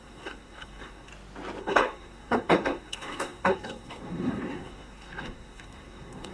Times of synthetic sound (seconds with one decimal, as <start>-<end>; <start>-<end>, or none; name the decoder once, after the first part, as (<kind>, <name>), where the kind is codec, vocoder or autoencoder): 0.0-1.1 (codec, SNAC); 1.6-6.3